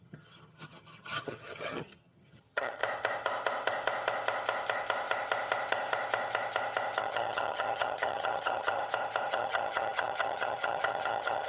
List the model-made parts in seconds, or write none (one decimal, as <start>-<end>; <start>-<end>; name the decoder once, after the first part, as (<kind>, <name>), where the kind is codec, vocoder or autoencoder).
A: 0.0-2.8 (vocoder, HiFi-GAN); 7.0-8.8; 9.3-11.5